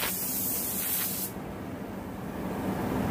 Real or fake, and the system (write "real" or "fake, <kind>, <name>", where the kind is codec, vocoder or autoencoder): real